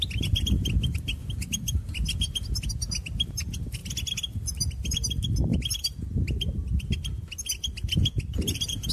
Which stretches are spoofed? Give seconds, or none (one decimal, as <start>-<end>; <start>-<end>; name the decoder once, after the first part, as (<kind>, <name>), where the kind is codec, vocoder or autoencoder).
none